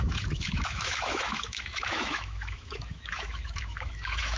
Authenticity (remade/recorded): remade